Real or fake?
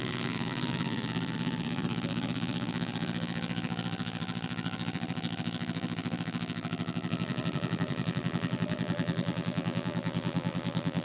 fake